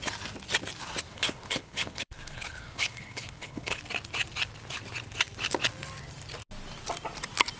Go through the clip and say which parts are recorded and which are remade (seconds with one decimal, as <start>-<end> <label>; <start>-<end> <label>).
0.0-1.1 recorded; 1.1-3.8 remade; 3.8-7.6 recorded